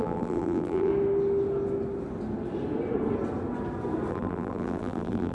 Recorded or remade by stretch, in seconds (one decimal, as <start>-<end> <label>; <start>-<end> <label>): 0.0-0.9 remade; 0.9-4.1 recorded; 4.1-5.3 remade

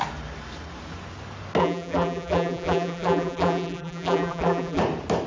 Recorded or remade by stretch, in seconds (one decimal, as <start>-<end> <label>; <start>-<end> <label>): 0.0-1.6 recorded; 1.6-4.8 remade; 4.8-5.3 recorded

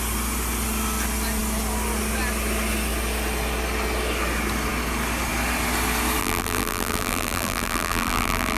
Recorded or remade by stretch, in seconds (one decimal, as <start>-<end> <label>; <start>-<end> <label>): 0.0-6.2 recorded; 6.2-8.6 remade

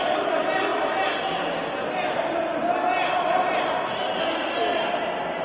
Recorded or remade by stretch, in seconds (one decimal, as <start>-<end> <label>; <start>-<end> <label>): 0.0-5.4 recorded

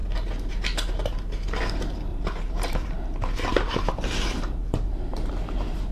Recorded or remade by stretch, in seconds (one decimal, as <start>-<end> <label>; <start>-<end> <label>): 0.0-2.1 recorded; 2.1-5.3 remade; 5.3-5.9 recorded